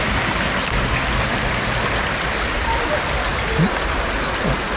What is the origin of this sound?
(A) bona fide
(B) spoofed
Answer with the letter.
A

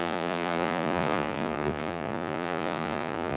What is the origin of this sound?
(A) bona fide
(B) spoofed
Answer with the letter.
B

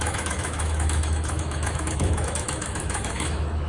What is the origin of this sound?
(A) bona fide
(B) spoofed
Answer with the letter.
B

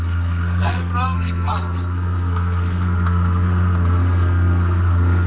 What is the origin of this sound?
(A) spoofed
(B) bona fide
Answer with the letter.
A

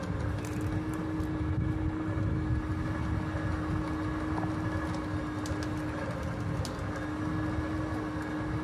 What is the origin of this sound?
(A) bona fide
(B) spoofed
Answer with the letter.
A